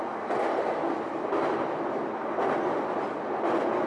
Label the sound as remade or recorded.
recorded